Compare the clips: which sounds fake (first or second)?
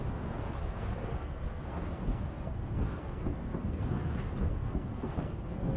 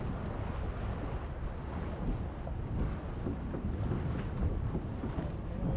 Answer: first